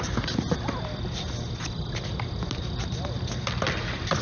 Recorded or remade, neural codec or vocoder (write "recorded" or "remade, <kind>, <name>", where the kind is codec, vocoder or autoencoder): recorded